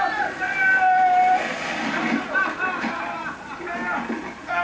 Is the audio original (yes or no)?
yes